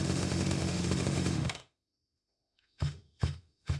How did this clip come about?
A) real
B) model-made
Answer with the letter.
B